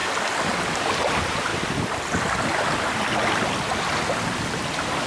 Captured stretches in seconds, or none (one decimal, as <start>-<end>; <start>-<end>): 0.0-5.1